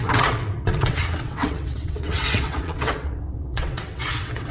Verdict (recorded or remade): remade